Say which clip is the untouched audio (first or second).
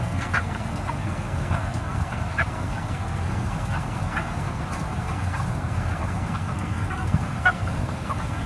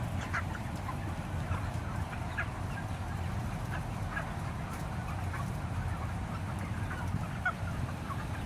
second